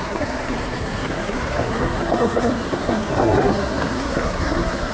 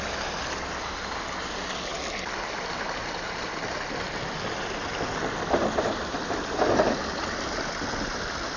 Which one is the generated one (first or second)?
first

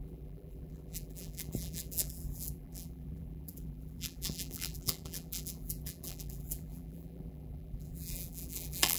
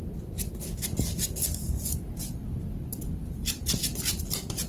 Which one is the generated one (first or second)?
first